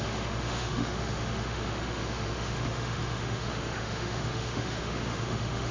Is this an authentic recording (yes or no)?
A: no